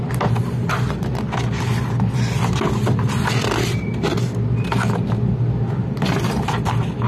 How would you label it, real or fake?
real